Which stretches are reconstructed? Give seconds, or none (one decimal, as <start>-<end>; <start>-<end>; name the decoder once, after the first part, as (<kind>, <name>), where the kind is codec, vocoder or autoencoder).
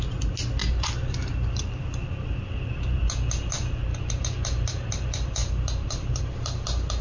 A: 0.6-3.0 (vocoder, BigVGAN v2); 3.9-4.9; 5.4-6.2